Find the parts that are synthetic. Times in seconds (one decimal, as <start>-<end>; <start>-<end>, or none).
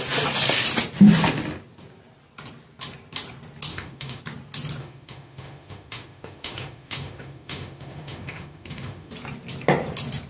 3.7-4.2; 4.8-9.1